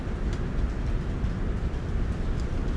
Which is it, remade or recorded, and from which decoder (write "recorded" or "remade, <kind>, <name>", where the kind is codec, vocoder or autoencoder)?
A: remade, vocoder, BigVGAN v2